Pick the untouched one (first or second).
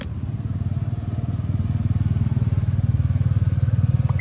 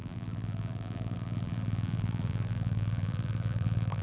first